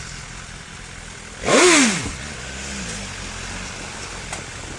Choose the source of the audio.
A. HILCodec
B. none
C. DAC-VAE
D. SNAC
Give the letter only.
B